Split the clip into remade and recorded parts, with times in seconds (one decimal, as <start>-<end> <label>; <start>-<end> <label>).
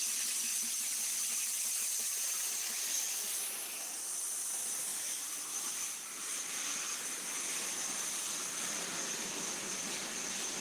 0.0-4.9 recorded; 4.9-7.8 remade; 7.8-8.4 recorded; 8.4-8.9 remade; 8.9-10.6 recorded